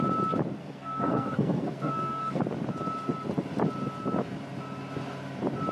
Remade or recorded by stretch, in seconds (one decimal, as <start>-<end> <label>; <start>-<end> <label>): 0.0-0.6 recorded; 0.6-2.4 remade; 2.4-5.7 recorded